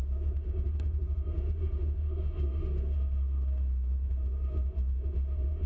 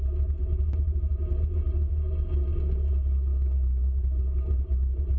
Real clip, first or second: second